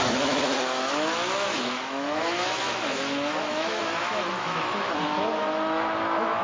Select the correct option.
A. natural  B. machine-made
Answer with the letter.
B